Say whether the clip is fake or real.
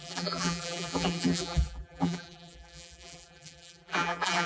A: fake